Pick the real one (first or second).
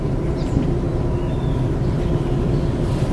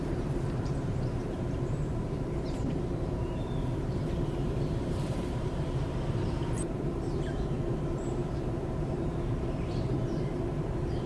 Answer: first